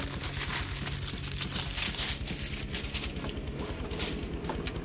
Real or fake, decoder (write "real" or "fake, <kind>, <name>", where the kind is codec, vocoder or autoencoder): real